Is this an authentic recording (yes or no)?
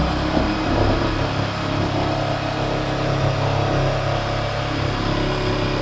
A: yes